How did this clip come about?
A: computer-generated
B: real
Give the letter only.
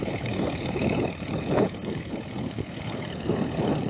A